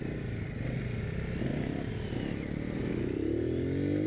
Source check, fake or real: real